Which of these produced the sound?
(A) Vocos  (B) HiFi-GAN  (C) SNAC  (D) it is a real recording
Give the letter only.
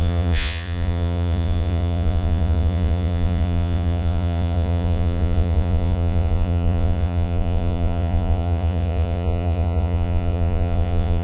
A